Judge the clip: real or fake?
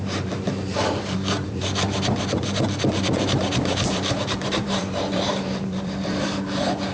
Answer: fake